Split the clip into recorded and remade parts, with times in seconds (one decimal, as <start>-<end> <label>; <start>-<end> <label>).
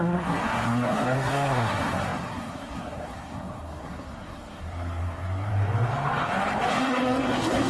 0.0-5.5 remade; 5.5-6.7 recorded; 6.7-7.7 remade